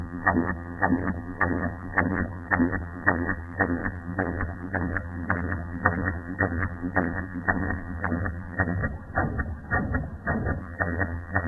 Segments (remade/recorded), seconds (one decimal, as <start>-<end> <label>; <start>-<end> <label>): 0.0-8.8 remade; 8.8-10.6 recorded; 10.6-11.5 remade